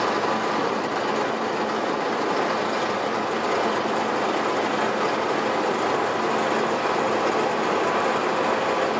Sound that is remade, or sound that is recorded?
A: recorded